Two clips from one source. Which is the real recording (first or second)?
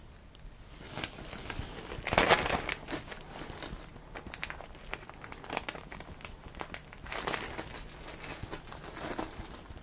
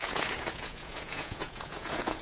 first